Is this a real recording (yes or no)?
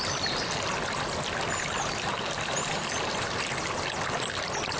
yes